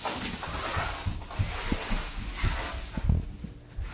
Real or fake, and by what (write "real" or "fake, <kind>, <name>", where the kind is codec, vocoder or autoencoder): real